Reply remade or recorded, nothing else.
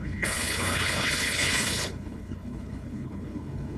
remade